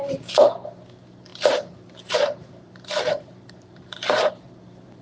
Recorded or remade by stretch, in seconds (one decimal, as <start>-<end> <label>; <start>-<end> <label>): 0.0-1.3 recorded; 1.3-4.3 remade; 4.3-5.0 recorded